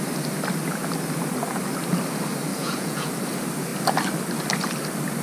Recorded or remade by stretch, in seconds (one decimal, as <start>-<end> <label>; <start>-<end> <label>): 0.0-2.5 recorded; 2.5-3.1 remade; 3.1-5.2 recorded

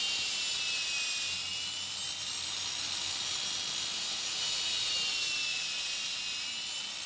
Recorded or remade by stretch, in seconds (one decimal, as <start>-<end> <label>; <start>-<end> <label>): 0.0-3.9 recorded; 3.9-4.9 remade; 4.9-5.5 recorded; 5.5-6.0 remade; 6.0-7.1 recorded

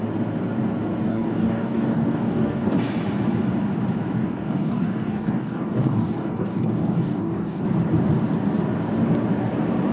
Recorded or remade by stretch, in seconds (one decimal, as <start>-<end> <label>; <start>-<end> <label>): 0.0-1.0 recorded; 1.0-2.7 remade; 2.7-4.2 recorded; 4.2-7.6 remade; 7.6-9.9 recorded

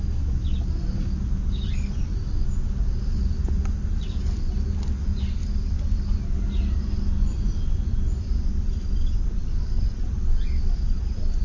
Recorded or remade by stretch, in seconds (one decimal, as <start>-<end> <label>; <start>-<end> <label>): 0.0-3.0 recorded; 3.0-4.6 remade; 4.6-11.4 recorded